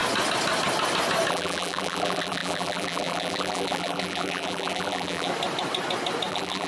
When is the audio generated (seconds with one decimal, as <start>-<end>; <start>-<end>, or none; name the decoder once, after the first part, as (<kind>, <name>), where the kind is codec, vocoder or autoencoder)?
1.3-5.3 (vocoder, BigVGAN v2); 6.3-6.7